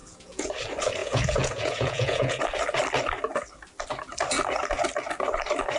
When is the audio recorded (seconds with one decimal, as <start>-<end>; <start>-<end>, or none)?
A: 0.5-1.0; 2.4-5.8